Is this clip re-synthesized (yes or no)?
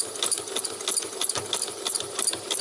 no